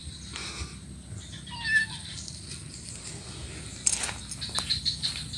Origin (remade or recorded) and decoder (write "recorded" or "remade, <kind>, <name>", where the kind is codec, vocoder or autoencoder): recorded